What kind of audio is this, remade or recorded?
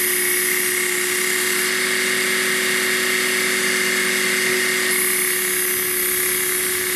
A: recorded